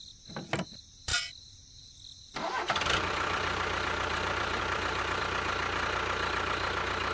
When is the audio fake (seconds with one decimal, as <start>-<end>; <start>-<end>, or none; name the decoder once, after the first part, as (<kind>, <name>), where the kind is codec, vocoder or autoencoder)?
1.1-5.2 (vocoder, BigVGAN v2)